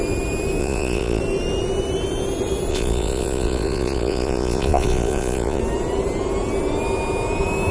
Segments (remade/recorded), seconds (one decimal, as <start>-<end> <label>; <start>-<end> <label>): 0.0-0.6 recorded; 0.6-1.2 remade; 1.2-2.7 recorded; 2.7-5.6 remade; 5.6-7.7 recorded